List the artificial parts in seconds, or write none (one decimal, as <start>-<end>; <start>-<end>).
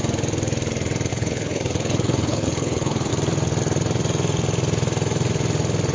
1.1-3.1